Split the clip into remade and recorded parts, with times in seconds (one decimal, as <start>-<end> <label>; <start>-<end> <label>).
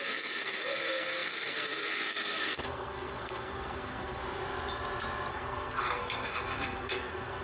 0.0-4.2 remade; 4.2-5.3 recorded; 5.3-7.4 remade